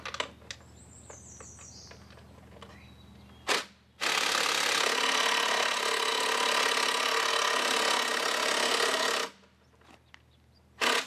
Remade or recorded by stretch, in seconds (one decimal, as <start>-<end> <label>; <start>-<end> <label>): 0.0-11.1 recorded